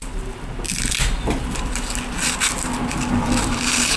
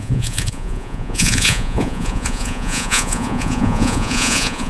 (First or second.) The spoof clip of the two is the second